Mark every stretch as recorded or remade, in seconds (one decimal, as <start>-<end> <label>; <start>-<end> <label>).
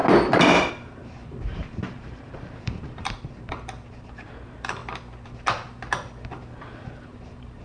0.0-0.7 recorded; 0.7-4.8 remade; 4.8-6.6 recorded; 6.6-7.6 remade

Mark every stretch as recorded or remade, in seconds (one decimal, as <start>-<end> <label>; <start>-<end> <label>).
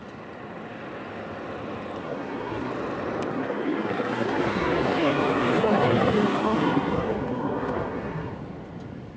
0.0-2.0 recorded; 2.0-2.7 remade; 2.7-3.3 recorded; 3.3-8.3 remade; 8.3-9.2 recorded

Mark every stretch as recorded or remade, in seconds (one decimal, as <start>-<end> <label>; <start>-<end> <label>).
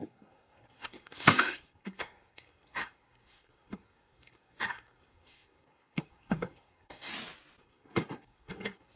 0.0-7.1 remade; 7.1-7.6 recorded; 7.6-9.0 remade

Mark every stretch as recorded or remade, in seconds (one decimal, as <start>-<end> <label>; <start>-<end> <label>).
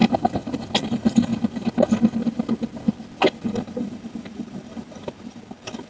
0.0-0.9 recorded; 0.9-1.3 remade; 1.3-3.6 recorded; 3.6-5.9 remade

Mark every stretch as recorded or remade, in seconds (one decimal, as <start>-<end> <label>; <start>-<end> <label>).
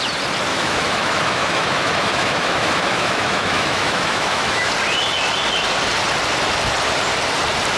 0.0-0.5 recorded; 0.5-4.7 remade; 4.7-7.8 recorded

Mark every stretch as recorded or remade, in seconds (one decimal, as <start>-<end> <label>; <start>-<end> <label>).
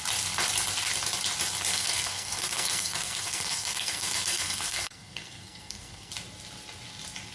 0.0-1.7 recorded; 1.7-6.1 remade; 6.1-7.3 recorded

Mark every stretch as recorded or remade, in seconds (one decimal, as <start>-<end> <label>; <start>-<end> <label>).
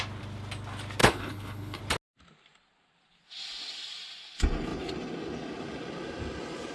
0.0-1.0 recorded; 1.0-1.8 remade; 1.8-6.7 recorded